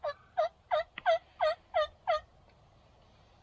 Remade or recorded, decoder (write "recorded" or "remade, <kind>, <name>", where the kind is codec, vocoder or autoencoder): remade, vocoder, BigVGAN v2